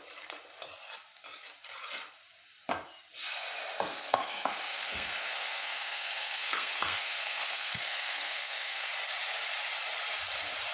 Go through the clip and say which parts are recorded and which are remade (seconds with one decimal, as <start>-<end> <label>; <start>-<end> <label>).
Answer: 0.0-3.9 recorded; 3.9-8.9 remade; 8.9-10.7 recorded

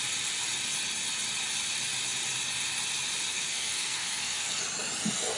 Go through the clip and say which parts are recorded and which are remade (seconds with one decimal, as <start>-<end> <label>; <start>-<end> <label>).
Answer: 0.0-3.3 recorded; 3.3-4.6 remade; 4.6-5.4 recorded